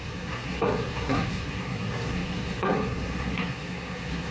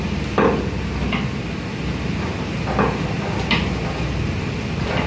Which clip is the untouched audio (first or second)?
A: second